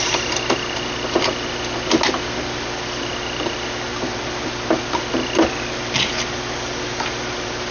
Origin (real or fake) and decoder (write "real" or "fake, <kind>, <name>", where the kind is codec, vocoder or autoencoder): real